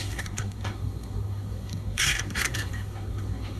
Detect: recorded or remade remade